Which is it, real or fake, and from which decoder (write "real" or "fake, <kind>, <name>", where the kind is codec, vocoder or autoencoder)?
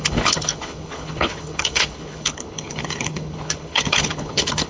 fake, codec, HILCodec